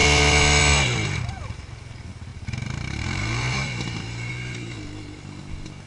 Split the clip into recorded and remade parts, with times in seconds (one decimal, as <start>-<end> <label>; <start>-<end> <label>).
0.0-2.3 recorded; 2.3-4.3 remade; 4.3-5.9 recorded